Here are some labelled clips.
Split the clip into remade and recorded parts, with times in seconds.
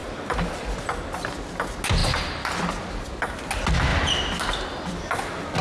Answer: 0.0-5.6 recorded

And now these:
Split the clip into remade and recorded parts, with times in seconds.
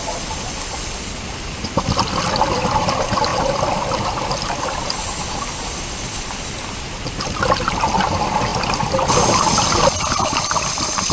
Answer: 0.0-11.1 recorded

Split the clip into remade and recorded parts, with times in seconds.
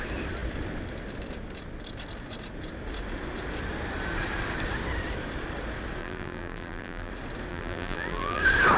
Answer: 0.0-6.0 recorded; 6.0-7.1 remade; 7.1-7.5 recorded; 7.5-8.4 remade; 8.4-8.8 recorded